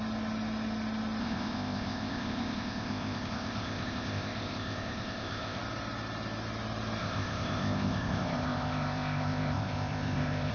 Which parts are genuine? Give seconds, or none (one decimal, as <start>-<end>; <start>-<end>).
0.0-1.2; 5.6-7.0